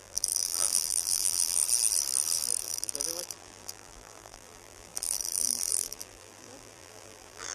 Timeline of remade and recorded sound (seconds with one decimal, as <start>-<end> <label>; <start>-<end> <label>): 0.0-1.6 remade; 1.6-2.6 recorded; 2.6-7.5 remade